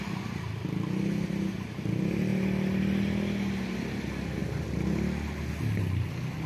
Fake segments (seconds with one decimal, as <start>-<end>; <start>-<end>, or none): none